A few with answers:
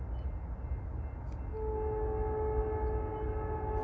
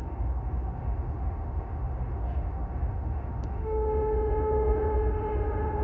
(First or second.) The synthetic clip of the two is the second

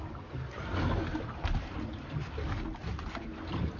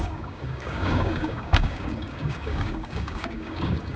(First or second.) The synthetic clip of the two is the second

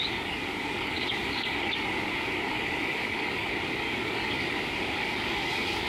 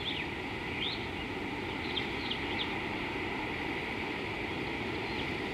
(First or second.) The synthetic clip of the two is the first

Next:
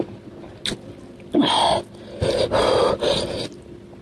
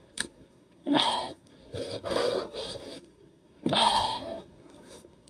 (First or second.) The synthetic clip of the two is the second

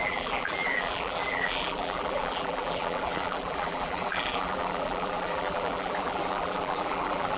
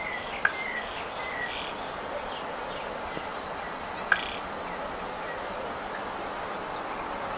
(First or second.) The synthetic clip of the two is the first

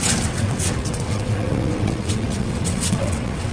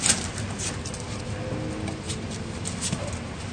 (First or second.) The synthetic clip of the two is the first